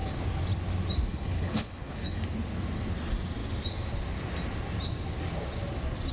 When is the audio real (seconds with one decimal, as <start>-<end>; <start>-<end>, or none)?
0.0-1.1; 2.2-6.1